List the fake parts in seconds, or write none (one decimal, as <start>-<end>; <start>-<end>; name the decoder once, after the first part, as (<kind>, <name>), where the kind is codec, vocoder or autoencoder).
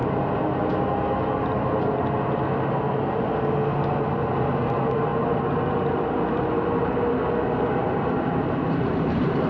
4.3-5.1 (vocoder, BigVGAN v2); 7.8-9.5